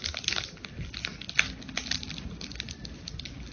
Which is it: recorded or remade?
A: recorded